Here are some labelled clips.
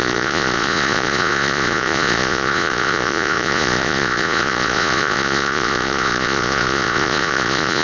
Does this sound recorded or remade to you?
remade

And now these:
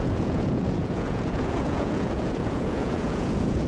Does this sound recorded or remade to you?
remade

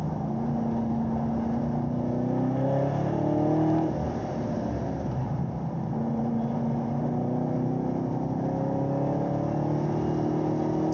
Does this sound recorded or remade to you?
recorded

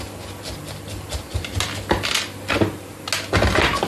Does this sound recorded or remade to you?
recorded